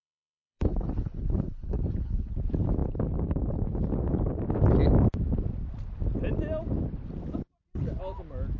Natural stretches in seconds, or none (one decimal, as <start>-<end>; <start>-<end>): 2.3-8.6